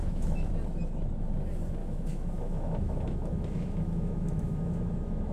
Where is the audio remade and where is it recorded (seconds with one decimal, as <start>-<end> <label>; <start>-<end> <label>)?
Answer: 0.0-0.5 remade; 0.5-1.8 recorded; 1.8-5.3 remade